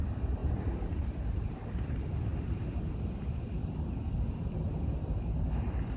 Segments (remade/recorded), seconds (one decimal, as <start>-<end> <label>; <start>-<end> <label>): 0.0-6.0 recorded